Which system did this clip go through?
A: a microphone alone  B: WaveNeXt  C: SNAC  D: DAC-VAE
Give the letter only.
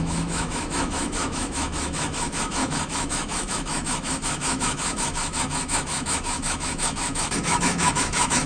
D